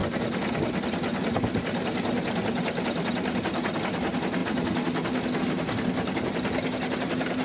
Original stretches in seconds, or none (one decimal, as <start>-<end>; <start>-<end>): 0.0-7.4